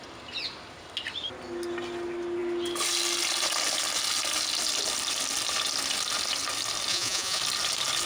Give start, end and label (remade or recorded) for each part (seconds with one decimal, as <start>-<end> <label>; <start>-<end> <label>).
0.0-6.9 recorded; 6.9-7.4 remade; 7.4-8.1 recorded